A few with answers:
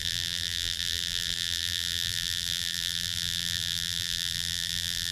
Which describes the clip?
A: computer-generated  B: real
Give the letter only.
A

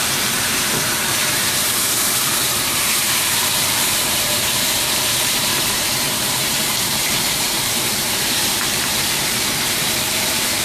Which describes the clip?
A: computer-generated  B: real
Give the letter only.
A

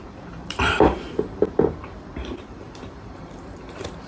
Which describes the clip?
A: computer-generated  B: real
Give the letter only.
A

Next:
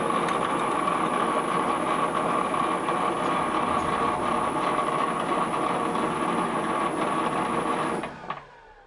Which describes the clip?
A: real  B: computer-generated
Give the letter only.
A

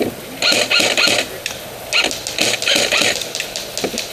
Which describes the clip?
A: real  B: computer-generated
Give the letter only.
A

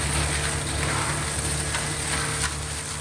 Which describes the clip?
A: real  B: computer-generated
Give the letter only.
A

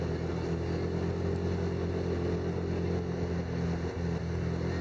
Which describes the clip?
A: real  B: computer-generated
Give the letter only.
A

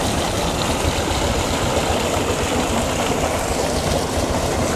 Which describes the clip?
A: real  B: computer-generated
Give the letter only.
A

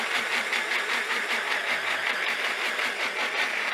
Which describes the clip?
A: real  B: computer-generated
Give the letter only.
B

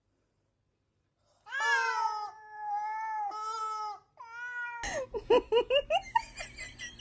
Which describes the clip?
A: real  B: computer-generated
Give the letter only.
A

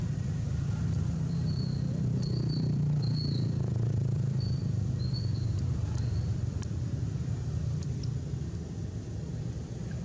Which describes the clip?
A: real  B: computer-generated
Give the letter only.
B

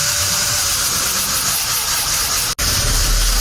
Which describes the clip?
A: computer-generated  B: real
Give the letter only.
B